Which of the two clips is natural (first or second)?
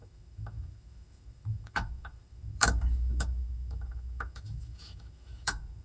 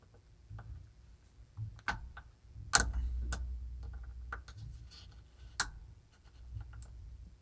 second